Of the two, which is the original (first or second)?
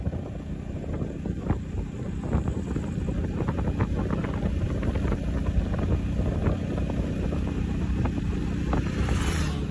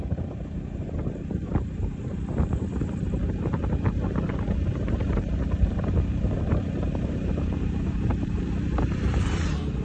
first